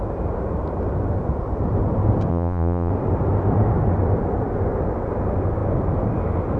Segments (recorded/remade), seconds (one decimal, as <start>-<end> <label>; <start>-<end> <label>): 0.0-2.3 recorded; 2.3-2.9 remade; 2.9-6.6 recorded